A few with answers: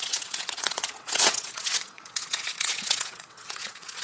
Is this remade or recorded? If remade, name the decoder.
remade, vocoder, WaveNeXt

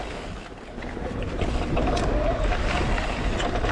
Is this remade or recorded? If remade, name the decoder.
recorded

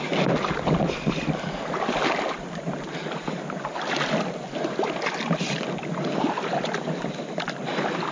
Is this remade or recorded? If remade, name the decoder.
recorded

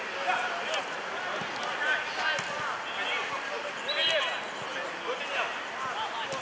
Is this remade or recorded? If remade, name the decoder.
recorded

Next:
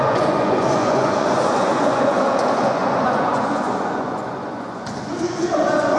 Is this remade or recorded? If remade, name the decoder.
remade, vocoder, Vocos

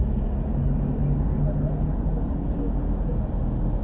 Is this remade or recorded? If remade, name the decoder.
recorded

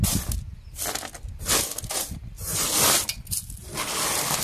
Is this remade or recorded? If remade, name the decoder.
recorded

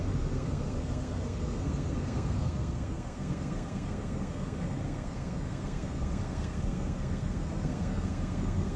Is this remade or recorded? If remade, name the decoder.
remade, codec, SNAC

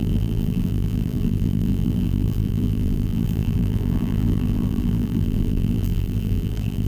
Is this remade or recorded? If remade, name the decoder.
remade, vocoder, BigVGAN v2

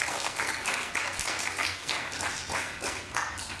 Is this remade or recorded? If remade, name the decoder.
remade, codec, SNAC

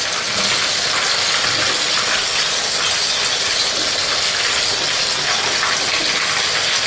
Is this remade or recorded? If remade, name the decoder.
recorded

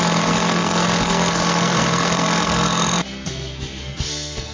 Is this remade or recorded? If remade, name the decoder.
remade, codec, SNAC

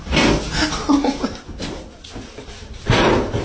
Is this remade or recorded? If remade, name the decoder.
recorded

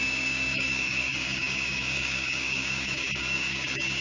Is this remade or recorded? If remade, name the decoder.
remade, codec, DAC